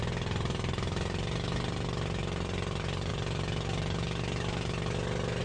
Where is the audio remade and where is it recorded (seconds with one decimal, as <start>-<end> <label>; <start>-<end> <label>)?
0.0-5.4 recorded